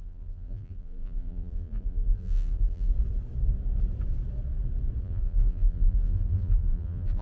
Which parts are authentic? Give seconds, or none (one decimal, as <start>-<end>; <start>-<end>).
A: 2.9-5.0